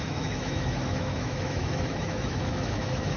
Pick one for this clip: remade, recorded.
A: remade